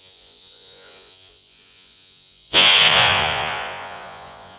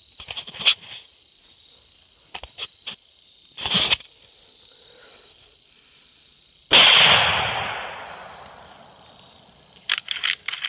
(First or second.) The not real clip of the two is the first